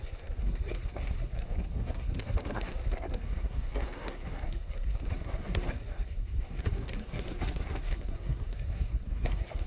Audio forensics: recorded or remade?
remade